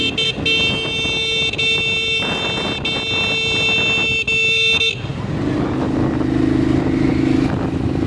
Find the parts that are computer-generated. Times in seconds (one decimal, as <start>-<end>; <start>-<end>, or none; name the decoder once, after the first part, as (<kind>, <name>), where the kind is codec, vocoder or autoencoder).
none